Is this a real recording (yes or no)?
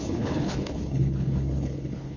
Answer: no